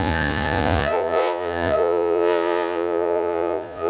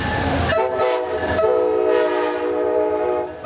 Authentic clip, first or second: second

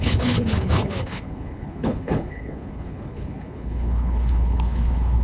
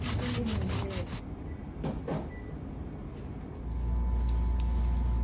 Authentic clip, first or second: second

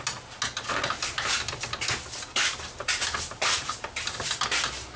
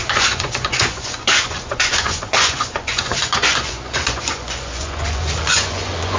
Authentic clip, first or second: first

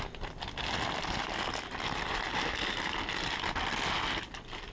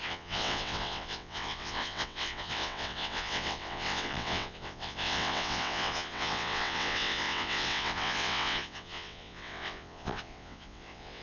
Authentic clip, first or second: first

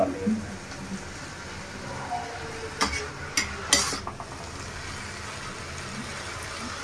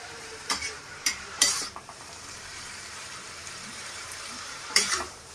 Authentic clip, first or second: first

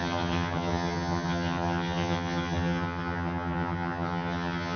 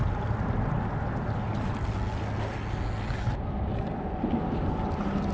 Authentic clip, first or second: second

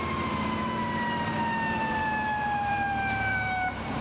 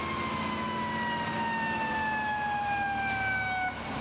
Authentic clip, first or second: second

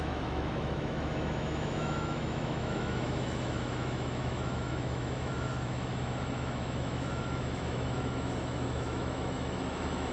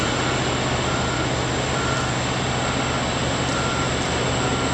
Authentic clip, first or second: second